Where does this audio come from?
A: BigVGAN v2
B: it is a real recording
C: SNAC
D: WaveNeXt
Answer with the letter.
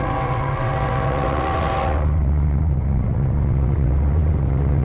D